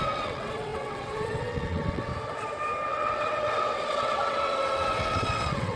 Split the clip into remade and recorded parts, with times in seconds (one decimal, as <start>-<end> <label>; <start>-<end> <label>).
0.0-2.1 remade; 2.1-2.9 recorded; 2.9-5.8 remade